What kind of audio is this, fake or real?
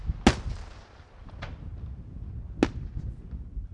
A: real